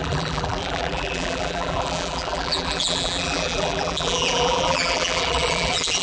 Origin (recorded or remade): remade